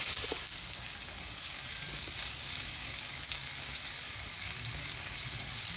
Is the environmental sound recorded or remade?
remade